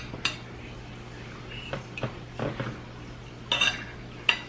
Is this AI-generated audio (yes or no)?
no